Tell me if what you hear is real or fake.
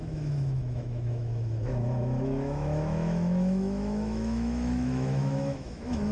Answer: fake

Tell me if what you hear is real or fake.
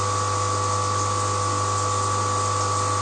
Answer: real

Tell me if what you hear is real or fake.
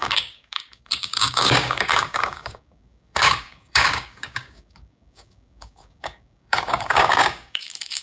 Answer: fake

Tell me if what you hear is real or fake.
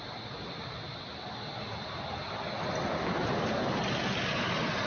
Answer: real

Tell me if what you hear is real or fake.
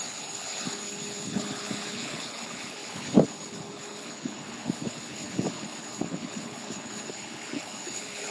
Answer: fake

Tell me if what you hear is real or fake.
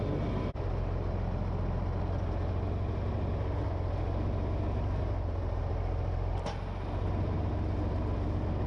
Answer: real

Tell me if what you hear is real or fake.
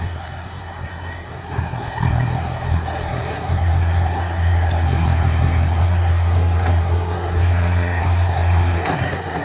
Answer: fake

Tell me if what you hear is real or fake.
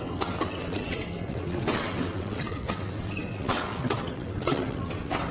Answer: fake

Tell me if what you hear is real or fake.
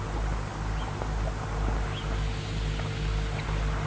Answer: real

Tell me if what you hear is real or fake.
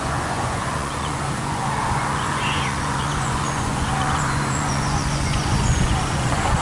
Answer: fake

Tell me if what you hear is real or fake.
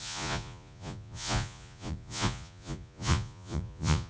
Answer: fake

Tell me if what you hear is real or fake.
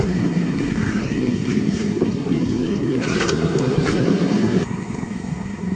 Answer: fake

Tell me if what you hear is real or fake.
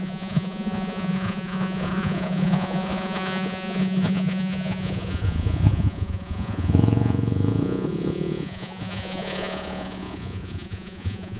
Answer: fake